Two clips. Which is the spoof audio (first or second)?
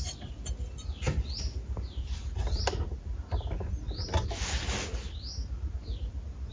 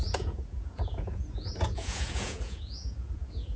second